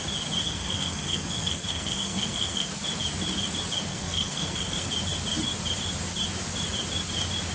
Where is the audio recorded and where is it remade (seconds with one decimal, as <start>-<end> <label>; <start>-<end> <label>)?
0.0-0.4 recorded; 0.4-2.7 remade; 2.7-3.9 recorded; 3.9-4.9 remade; 4.9-7.5 recorded